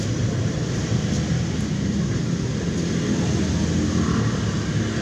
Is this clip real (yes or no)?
yes